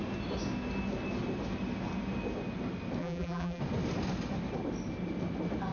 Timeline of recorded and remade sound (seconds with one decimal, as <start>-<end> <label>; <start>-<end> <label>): 0.0-3.0 recorded; 3.0-3.6 remade; 3.6-5.7 recorded